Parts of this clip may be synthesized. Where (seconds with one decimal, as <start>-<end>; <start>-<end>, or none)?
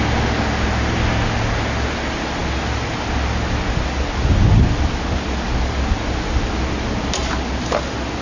none